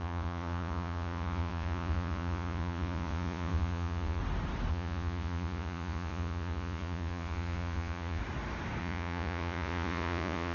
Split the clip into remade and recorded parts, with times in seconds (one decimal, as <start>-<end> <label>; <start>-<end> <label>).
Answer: 0.0-4.2 remade; 4.2-4.7 recorded; 4.7-8.2 remade; 8.2-8.8 recorded; 8.8-10.5 remade